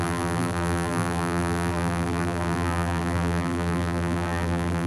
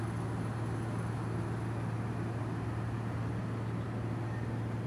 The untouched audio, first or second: second